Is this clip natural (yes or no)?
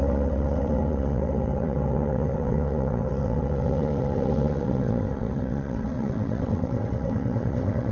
no